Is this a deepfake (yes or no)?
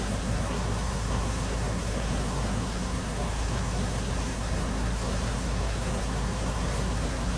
yes